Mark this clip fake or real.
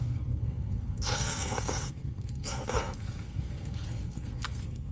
fake